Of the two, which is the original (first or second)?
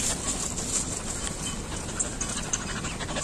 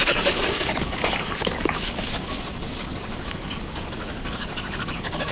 first